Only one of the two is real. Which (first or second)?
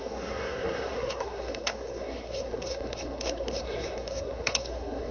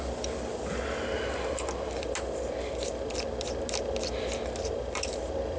second